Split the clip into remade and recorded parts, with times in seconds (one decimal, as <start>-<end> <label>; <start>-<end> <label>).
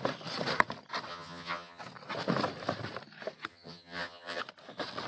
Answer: 0.0-1.1 recorded; 1.1-1.8 remade; 1.8-3.5 recorded; 3.5-4.4 remade; 4.4-5.1 recorded